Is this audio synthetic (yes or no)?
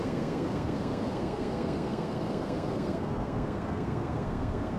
yes